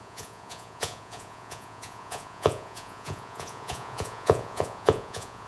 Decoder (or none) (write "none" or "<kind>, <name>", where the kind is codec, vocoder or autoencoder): vocoder, Vocos